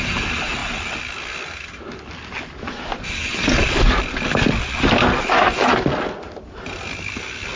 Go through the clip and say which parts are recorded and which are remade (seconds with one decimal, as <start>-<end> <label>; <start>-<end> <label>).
0.0-7.6 recorded